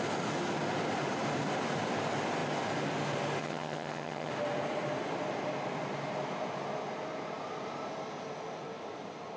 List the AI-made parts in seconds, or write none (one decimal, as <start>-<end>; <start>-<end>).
3.4-4.3